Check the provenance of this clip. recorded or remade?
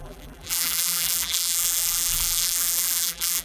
remade